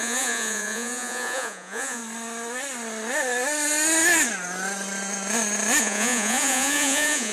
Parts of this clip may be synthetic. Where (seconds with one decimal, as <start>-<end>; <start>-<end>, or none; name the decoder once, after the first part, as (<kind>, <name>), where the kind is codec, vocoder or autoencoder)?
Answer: 0.0-2.0 (vocoder, Vocos); 5.8-7.3